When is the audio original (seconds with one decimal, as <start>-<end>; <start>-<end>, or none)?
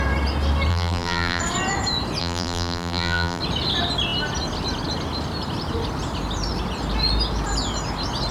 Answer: 0.0-0.7; 1.4-2.2; 3.4-8.3